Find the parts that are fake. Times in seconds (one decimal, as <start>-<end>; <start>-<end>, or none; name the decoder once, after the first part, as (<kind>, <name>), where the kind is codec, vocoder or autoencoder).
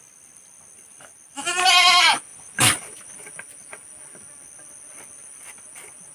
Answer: 2.3-3.3 (vocoder, BigVGAN v2)